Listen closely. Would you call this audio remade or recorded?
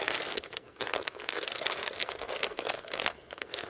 remade